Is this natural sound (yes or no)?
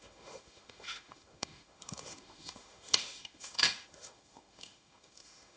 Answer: no